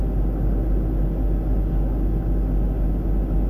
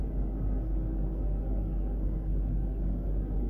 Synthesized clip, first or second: second